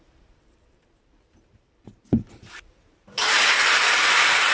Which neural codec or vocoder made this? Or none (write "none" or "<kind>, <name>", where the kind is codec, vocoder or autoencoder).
vocoder, BigVGAN v2